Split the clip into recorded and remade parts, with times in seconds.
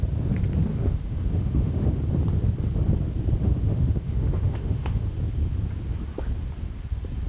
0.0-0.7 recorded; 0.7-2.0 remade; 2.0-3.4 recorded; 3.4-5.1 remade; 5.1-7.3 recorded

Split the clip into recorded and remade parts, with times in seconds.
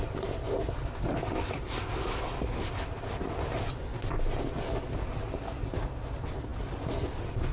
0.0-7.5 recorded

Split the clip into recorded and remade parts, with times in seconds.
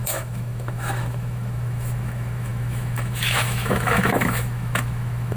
0.0-5.4 remade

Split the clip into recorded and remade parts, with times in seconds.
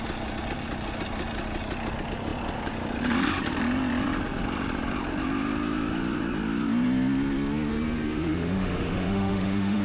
0.0-7.7 recorded; 7.7-9.8 remade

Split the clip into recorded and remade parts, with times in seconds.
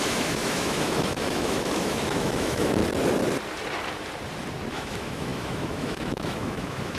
0.0-2.8 remade; 2.8-4.7 recorded; 4.7-7.0 remade